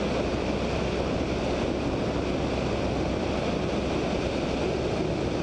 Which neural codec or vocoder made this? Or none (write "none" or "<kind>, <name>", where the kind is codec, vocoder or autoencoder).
none